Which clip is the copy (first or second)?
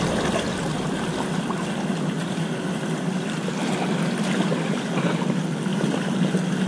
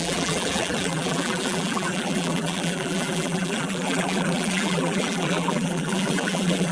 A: second